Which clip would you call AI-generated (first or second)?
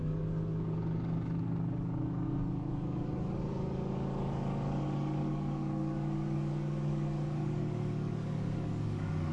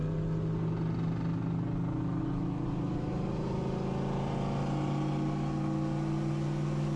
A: first